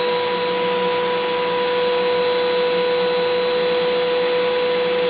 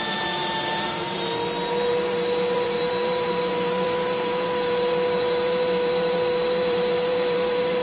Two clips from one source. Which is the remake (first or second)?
second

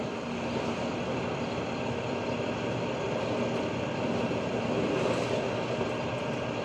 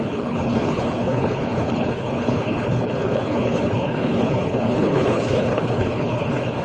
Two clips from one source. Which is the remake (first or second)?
second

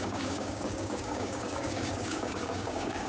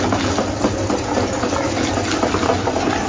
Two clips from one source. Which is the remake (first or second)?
first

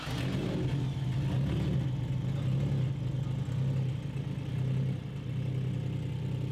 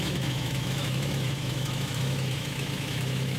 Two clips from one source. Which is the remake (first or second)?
second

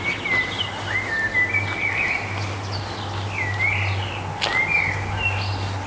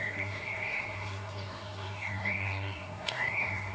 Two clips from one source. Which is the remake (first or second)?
second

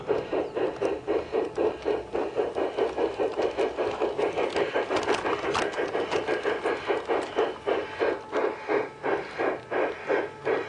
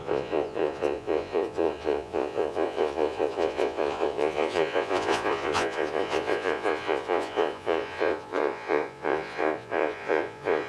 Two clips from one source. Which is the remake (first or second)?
second